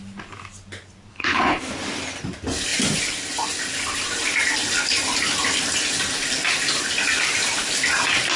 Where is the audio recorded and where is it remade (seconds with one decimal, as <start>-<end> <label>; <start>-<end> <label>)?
0.0-1.1 recorded; 1.1-1.6 remade; 1.6-8.4 recorded